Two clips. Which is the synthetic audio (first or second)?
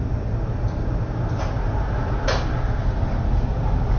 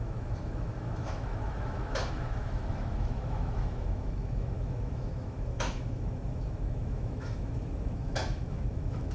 second